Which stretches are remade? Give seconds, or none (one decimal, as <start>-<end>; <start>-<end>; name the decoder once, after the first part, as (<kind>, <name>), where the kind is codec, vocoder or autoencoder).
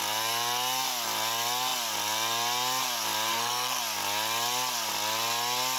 3.3-3.8 (codec, SNAC)